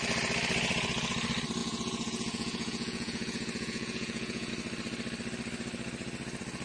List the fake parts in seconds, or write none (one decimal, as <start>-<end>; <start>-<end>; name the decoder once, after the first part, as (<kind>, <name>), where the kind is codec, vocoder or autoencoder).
1.6-4.5 (vocoder, Vocos)

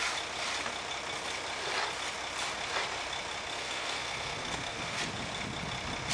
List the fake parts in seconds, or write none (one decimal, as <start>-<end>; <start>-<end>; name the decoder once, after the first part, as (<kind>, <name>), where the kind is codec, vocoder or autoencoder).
3.5-5.0 (codec, SNAC)